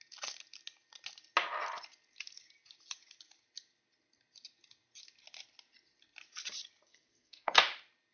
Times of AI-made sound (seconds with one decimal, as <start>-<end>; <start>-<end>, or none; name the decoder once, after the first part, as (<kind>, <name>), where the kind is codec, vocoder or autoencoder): 6.9-7.6 (codec, SNAC)